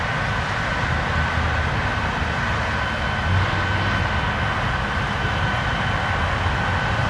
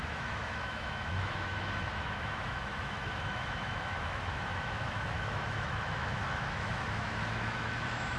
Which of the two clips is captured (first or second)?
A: first